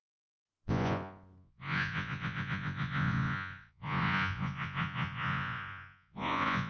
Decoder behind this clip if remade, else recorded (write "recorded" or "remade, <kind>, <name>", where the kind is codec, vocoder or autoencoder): remade, vocoder, Vocos